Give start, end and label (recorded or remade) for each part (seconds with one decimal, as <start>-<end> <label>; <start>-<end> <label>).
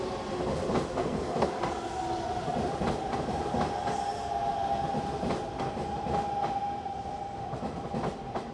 0.0-1.0 recorded; 1.0-1.6 remade; 1.6-8.5 recorded